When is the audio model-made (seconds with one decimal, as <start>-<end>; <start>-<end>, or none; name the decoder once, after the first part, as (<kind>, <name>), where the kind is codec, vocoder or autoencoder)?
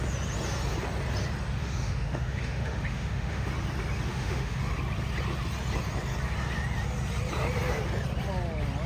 1.6-3.5 (autoencoder, DAC-VAE); 4.1-4.6